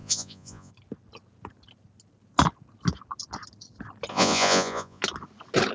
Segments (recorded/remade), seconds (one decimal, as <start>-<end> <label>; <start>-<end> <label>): 0.0-0.7 remade; 0.7-4.1 recorded; 4.1-5.0 remade; 5.0-5.7 recorded